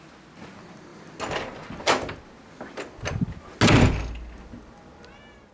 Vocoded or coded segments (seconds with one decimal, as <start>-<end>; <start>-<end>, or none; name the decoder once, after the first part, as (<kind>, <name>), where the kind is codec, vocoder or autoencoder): none